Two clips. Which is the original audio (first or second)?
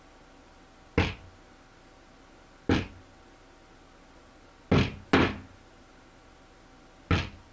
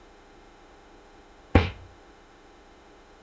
first